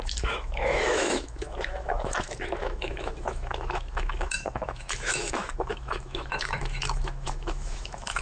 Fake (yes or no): yes